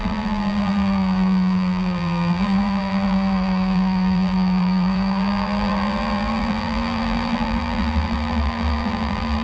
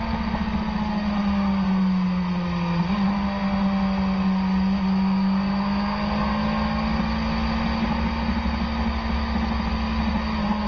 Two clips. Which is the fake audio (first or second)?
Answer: first